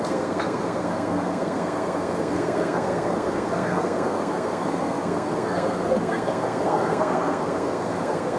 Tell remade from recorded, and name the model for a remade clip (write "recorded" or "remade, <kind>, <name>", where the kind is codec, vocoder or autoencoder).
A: remade, codec, SNAC